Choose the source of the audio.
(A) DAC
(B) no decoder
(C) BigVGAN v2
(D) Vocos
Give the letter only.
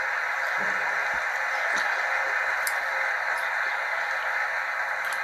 B